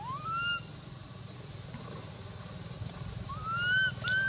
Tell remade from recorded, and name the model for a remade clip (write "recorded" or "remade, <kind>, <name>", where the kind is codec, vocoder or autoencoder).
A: recorded